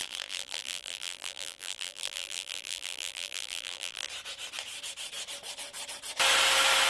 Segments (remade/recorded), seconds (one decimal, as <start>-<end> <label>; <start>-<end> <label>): 0.0-4.1 remade; 4.1-6.9 recorded